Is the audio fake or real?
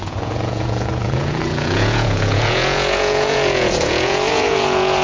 fake